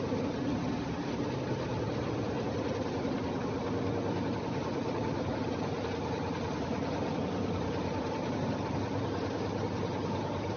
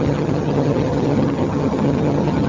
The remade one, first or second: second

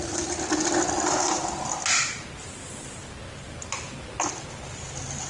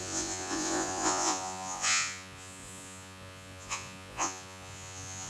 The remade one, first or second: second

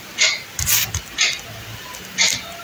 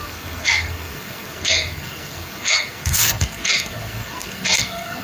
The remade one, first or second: second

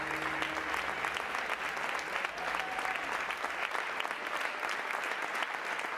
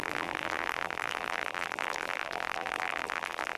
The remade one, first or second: second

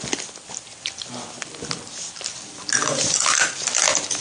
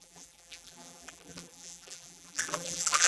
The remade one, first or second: second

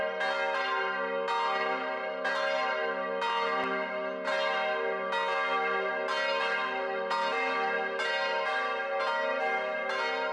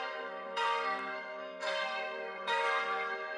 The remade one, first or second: second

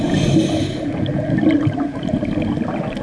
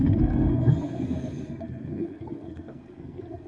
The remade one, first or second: second